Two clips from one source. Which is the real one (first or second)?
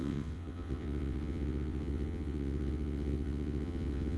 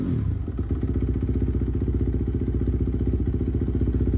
second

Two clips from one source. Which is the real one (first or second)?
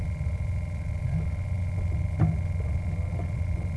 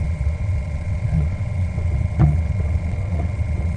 first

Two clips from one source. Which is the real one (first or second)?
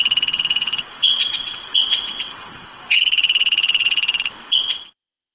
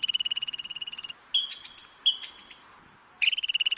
second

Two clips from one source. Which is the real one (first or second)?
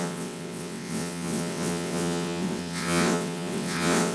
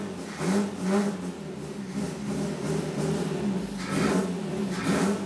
second